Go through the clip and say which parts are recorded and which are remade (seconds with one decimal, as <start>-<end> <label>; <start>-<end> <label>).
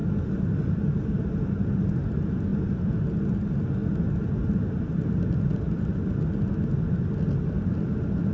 0.0-8.3 recorded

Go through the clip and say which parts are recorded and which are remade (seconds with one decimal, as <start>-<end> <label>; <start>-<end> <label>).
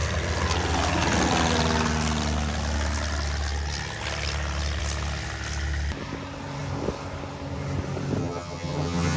0.0-8.2 recorded; 8.2-9.2 remade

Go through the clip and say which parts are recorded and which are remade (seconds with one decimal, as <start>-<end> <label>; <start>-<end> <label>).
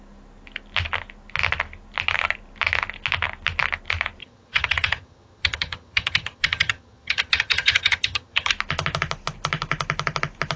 0.0-4.2 recorded; 4.2-8.5 remade; 8.5-10.6 recorded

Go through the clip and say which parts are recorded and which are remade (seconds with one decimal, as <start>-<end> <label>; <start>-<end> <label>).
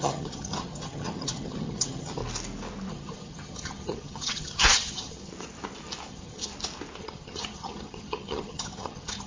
0.0-2.2 remade; 2.2-2.9 recorded; 2.9-5.3 remade; 5.3-6.1 recorded; 6.1-6.5 remade; 6.5-7.0 recorded; 7.0-9.3 remade